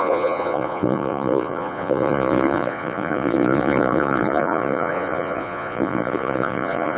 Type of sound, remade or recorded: remade